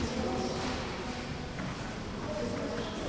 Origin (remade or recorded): recorded